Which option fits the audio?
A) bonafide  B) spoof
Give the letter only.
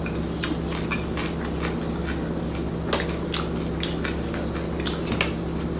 A